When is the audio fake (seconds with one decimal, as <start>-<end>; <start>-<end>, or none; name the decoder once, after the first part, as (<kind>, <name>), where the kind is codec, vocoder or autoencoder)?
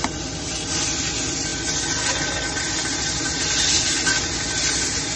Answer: none